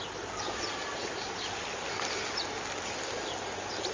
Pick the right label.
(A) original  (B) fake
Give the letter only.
A